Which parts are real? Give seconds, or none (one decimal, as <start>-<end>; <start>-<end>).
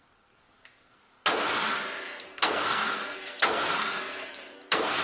1.0-2.2